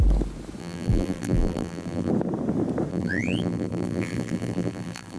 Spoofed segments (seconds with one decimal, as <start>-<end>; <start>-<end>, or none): 0.6-2.1; 2.9-5.2